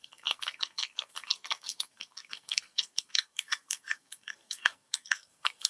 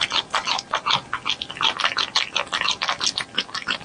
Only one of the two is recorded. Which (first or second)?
second